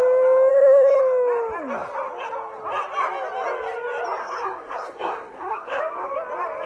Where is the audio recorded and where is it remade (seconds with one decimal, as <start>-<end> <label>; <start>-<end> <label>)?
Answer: 0.0-0.5 recorded; 0.5-1.0 remade; 1.0-4.2 recorded; 4.2-5.8 remade; 5.8-6.7 recorded

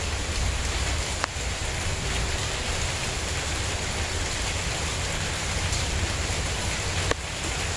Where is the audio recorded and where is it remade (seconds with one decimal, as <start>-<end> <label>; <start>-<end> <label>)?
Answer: 0.0-2.4 recorded; 2.4-6.2 remade; 6.2-7.8 recorded

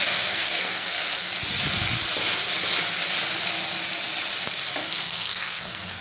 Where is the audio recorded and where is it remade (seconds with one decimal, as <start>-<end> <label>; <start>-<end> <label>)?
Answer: 0.0-1.3 remade; 1.3-4.9 recorded; 4.9-6.0 remade